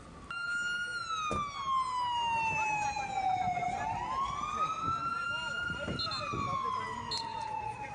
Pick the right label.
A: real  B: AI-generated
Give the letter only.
A